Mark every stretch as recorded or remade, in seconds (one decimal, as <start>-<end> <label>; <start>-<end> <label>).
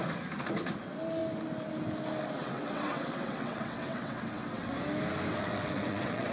0.0-2.4 recorded; 2.4-4.7 remade; 4.7-5.3 recorded; 5.3-6.3 remade